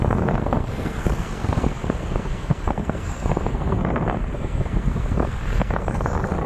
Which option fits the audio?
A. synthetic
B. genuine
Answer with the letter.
A